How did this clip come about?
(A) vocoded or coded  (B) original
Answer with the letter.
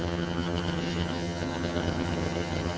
A